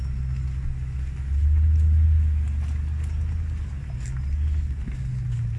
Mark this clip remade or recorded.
recorded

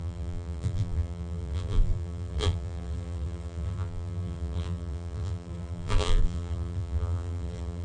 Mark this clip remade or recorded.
remade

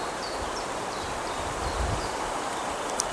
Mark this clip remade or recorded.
remade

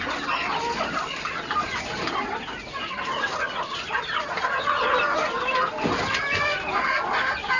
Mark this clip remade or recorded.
recorded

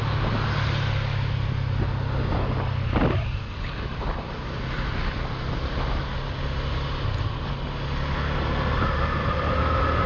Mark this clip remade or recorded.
recorded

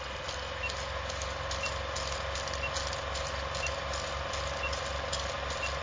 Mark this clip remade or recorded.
recorded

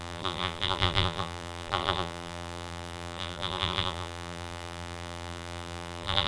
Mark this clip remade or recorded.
remade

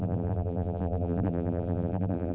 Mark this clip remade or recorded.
remade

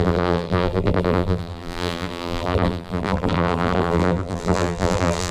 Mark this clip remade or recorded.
remade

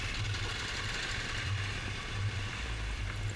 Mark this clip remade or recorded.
remade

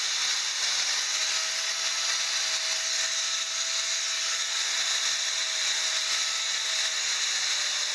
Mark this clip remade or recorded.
recorded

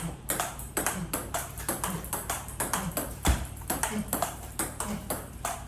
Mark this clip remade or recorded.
remade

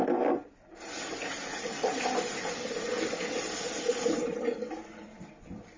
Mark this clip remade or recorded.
recorded